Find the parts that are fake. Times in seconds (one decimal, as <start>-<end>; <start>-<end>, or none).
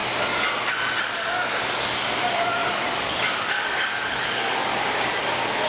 1.0-4.7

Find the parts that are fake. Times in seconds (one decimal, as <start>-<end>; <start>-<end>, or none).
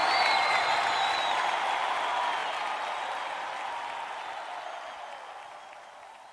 none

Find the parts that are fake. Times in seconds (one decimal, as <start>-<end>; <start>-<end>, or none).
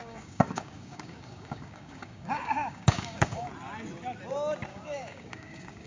0.0-3.5; 4.7-5.9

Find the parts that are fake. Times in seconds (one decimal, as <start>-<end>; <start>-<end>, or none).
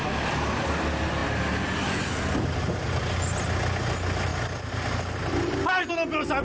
none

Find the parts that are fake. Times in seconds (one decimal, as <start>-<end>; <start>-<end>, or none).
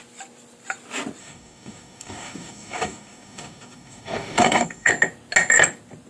1.2-4.9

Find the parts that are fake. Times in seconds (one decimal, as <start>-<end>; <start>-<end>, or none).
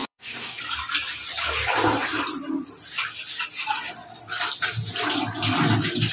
0.0-0.6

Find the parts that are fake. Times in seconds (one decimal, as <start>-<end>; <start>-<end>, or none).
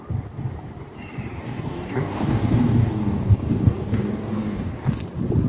1.4-4.7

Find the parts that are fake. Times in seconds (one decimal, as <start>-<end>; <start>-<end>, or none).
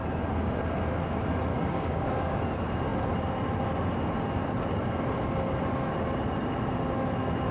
1.5-2.4